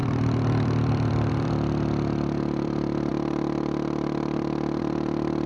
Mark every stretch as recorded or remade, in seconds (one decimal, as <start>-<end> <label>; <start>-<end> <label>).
0.0-3.1 remade; 3.1-4.8 recorded; 4.8-5.5 remade